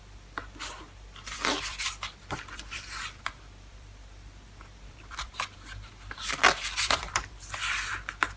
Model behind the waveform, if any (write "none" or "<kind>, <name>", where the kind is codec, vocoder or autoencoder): vocoder, BigVGAN v2